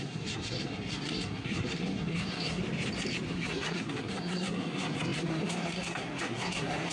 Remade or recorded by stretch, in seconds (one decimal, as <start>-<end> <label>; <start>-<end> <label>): 0.0-2.6 remade; 2.6-3.3 recorded; 3.3-6.9 remade